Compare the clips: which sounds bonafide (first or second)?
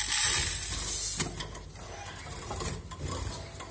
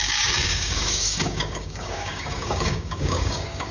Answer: first